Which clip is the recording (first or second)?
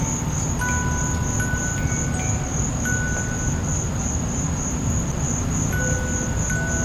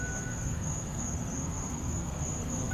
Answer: first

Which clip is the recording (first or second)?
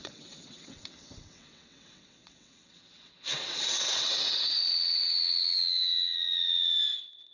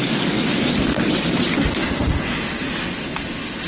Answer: second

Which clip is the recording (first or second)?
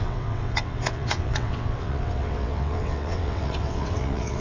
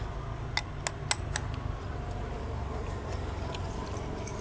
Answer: second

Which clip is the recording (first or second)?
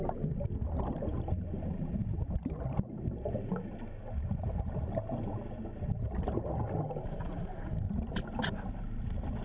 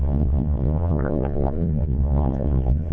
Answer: first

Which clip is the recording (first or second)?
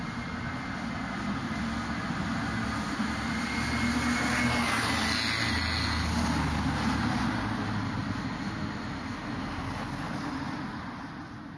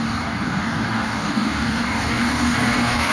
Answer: first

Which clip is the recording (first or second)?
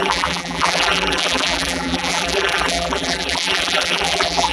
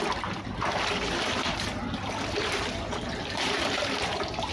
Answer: second